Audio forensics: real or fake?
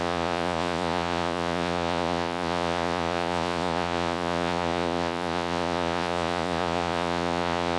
fake